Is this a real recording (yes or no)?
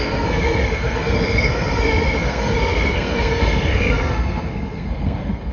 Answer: no